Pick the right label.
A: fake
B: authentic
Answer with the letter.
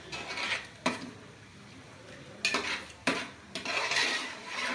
B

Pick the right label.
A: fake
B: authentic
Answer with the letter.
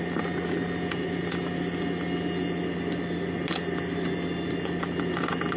B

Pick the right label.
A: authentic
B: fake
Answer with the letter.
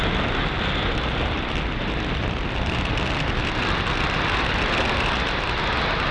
A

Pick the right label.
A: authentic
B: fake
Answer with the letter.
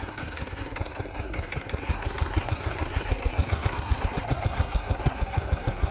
B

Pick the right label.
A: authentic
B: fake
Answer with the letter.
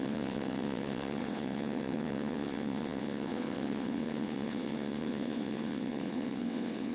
B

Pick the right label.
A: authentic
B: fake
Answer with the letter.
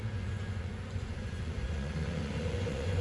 B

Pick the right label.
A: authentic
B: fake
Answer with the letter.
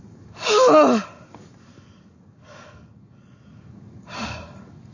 B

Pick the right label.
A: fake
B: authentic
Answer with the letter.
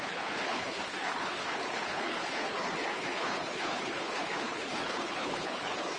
A